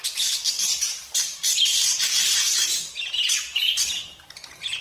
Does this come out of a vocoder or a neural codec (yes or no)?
yes